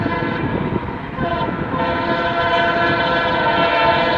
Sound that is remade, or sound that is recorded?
recorded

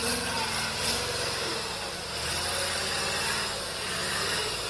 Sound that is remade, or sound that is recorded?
recorded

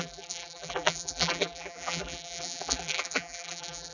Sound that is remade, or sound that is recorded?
remade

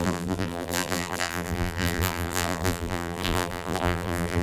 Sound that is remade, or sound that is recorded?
remade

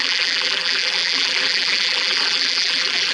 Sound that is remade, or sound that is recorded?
remade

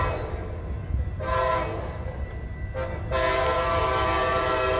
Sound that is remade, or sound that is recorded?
recorded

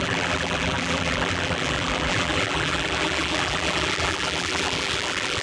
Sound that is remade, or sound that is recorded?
remade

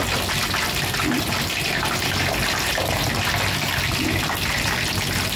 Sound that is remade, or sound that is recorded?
recorded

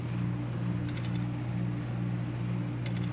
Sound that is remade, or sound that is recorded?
recorded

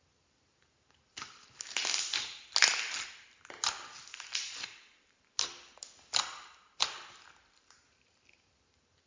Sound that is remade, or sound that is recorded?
recorded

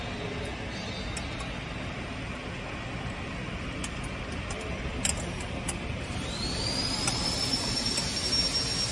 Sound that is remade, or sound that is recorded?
recorded